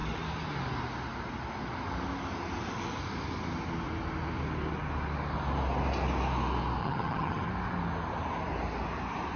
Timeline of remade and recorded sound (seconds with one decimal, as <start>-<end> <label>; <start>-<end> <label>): 0.0-6.8 recorded; 6.8-7.5 remade; 7.5-9.4 recorded